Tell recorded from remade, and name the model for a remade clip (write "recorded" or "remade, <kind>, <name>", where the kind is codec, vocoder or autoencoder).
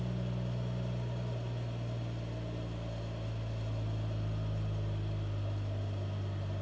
recorded